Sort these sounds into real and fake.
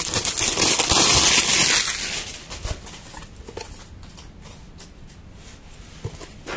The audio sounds real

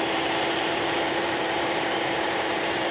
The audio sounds fake